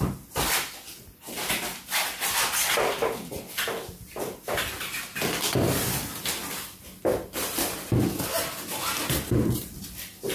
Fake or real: real